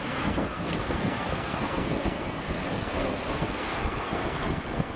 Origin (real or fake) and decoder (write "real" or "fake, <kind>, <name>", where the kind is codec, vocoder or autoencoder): fake, codec, SNAC